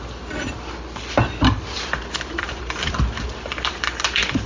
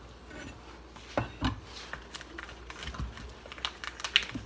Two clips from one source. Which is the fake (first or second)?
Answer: first